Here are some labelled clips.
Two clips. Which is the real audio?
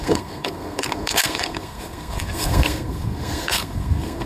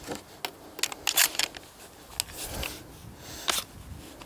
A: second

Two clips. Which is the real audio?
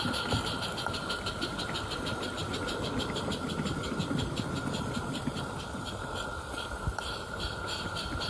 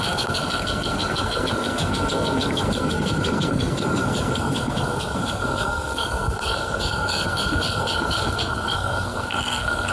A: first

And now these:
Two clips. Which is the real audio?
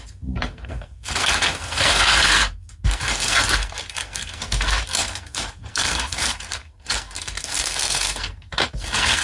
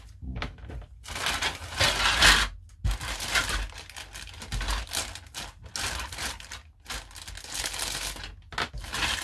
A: second